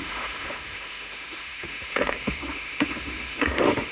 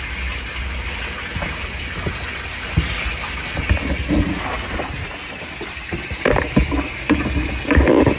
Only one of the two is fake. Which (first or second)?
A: first